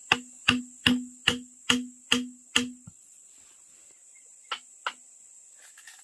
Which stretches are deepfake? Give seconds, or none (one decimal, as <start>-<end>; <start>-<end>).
none